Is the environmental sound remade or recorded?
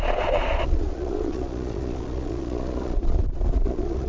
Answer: remade